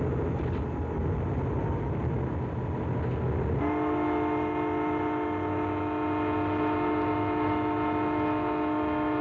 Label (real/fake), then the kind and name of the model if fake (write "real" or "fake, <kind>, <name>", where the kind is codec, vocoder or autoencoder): real